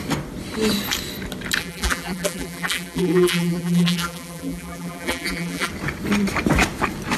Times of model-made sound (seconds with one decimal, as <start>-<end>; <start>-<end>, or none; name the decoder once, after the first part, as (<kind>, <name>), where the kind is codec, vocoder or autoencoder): 1.6-5.7 (vocoder, BigVGAN v2)